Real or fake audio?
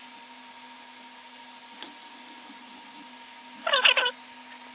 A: real